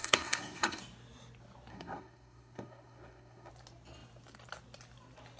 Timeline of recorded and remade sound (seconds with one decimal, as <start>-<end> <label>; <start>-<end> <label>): 0.0-0.8 remade; 0.8-1.7 recorded; 1.7-3.5 remade; 3.5-5.4 recorded